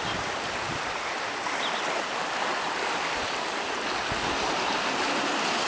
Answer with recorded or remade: remade